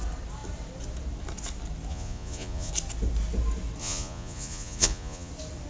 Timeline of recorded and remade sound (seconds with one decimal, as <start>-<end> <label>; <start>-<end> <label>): 0.0-1.9 recorded; 1.9-2.7 remade; 2.7-3.8 recorded; 3.8-5.3 remade; 5.3-5.7 recorded